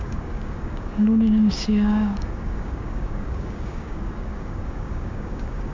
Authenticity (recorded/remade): remade